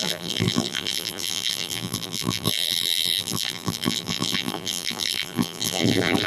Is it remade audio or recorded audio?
remade